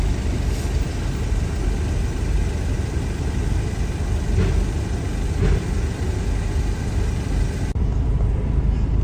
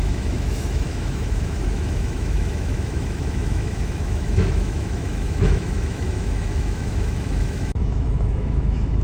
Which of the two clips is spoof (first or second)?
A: second